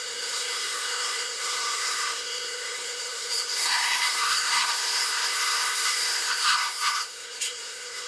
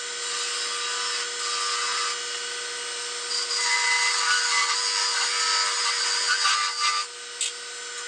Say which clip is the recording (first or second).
second